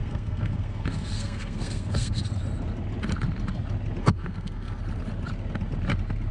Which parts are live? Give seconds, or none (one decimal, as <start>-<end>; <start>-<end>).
2.2-4.0; 4.8-6.3